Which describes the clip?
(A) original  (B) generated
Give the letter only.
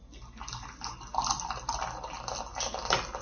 A